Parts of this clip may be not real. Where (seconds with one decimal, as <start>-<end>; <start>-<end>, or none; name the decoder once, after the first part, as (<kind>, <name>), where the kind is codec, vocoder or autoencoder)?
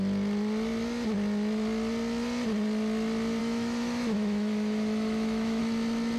3.4-5.6 (autoencoder, DAC-VAE)